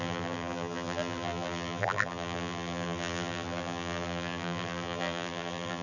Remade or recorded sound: remade